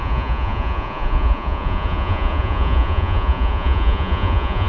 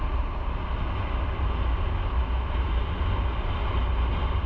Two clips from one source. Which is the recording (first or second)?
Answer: second